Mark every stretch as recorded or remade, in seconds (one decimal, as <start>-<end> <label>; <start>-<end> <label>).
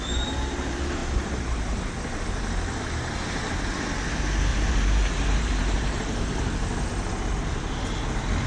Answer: 0.0-4.5 recorded; 4.5-6.2 remade; 6.2-8.5 recorded